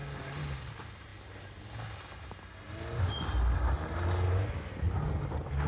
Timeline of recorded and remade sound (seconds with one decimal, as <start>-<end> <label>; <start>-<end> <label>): 0.0-5.7 recorded